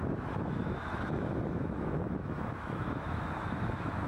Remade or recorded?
remade